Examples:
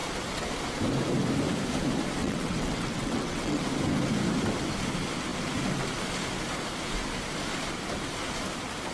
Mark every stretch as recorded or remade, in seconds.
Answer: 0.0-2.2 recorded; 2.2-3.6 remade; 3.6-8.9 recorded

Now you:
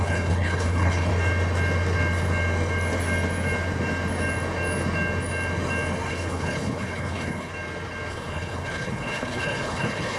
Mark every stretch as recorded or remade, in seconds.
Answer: 0.0-1.1 remade; 1.1-6.1 recorded; 6.1-7.5 remade; 7.5-8.1 recorded; 8.1-10.2 remade

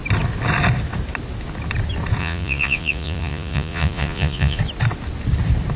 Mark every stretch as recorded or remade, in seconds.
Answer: 0.0-2.2 recorded; 2.2-4.6 remade; 4.6-5.8 recorded

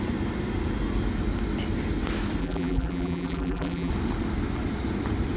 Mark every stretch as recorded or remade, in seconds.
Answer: 0.0-2.4 recorded; 2.4-3.9 remade; 3.9-5.4 recorded

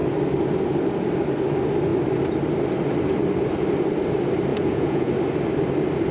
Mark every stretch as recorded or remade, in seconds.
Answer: 0.0-4.5 recorded; 4.5-5.1 remade; 5.1-6.1 recorded